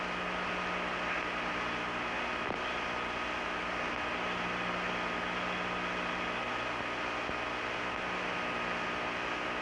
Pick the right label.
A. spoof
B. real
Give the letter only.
B